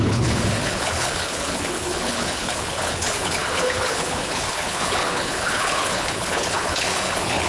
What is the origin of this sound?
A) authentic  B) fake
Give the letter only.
B